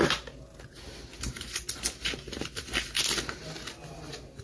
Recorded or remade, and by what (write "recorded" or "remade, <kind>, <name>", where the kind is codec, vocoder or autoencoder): recorded